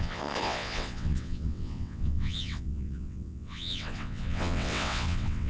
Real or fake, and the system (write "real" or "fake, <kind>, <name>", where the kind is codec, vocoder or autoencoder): fake, vocoder, WaveNeXt